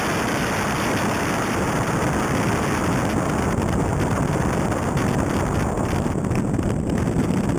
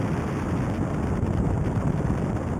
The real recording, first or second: first